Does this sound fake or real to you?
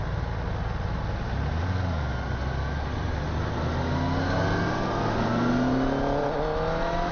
real